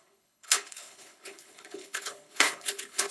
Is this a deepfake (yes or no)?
yes